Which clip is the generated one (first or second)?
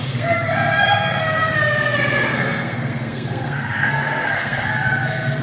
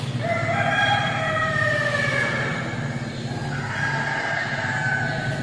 first